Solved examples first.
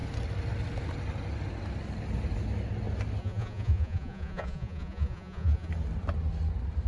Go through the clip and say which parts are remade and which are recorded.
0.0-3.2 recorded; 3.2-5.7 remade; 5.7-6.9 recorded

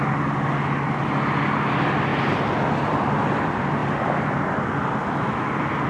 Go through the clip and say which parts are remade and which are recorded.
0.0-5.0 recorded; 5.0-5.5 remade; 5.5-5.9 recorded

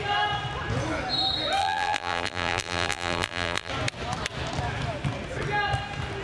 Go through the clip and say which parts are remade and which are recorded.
0.0-1.6 recorded; 1.6-3.7 remade; 3.7-6.2 recorded

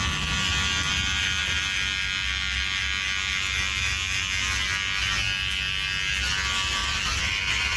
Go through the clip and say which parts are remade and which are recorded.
0.0-6.8 recorded; 6.8-7.8 remade

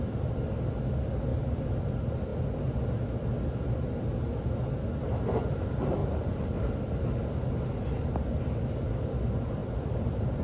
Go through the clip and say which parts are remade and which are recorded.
0.0-1.3 recorded; 1.3-1.9 remade; 1.9-6.0 recorded; 6.0-6.7 remade; 6.7-10.4 recorded

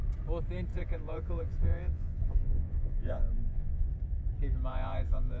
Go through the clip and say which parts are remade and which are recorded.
0.0-0.7 recorded; 0.7-3.9 remade; 3.9-4.7 recorded; 4.7-5.4 remade

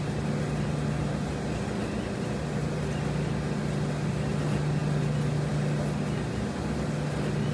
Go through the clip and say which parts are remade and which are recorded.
0.0-7.5 recorded

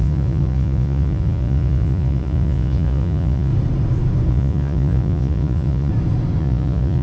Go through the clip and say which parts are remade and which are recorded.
0.0-3.5 remade; 3.5-4.3 recorded; 4.3-5.9 remade; 5.9-6.4 recorded; 6.4-7.0 remade